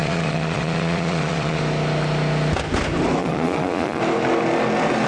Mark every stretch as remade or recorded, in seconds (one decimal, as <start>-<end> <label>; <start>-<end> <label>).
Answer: 0.0-1.6 remade; 1.6-3.2 recorded; 3.2-4.0 remade; 4.0-5.1 recorded